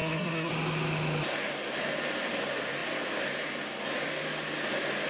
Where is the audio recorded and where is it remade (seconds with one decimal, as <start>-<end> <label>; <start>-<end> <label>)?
0.0-0.5 remade; 0.5-5.1 recorded